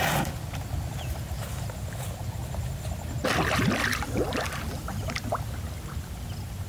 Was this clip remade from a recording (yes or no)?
no